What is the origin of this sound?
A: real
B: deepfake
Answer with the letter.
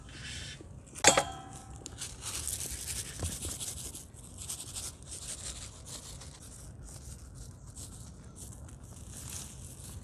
A